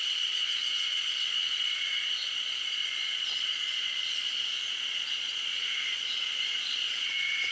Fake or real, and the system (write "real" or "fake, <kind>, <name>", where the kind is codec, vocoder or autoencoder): fake, vocoder, Vocos